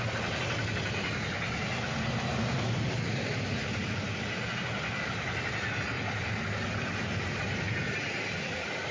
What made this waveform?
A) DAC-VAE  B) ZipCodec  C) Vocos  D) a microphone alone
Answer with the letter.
D